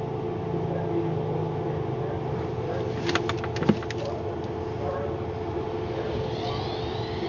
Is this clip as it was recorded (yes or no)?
yes